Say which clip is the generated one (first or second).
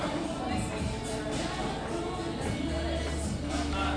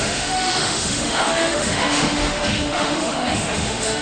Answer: second